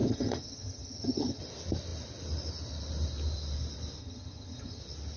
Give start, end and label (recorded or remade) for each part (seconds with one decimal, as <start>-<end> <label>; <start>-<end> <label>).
0.0-1.4 remade; 1.4-4.0 recorded; 4.0-4.8 remade; 4.8-5.2 recorded